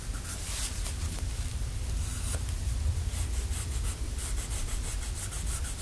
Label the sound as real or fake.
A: real